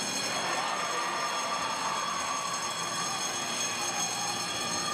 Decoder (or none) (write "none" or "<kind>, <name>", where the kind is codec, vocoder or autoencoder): none